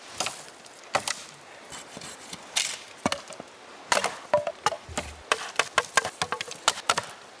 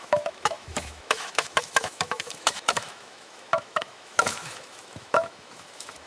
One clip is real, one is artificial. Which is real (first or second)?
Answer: first